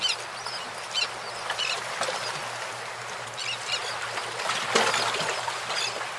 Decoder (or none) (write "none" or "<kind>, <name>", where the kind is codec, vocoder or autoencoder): none